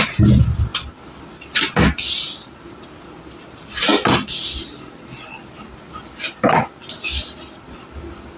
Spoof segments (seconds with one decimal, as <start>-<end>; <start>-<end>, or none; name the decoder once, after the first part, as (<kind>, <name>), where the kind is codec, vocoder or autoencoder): none